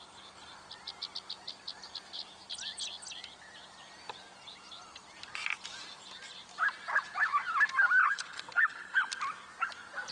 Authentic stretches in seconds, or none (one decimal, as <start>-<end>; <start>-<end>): 0.0-8.0; 9.1-10.1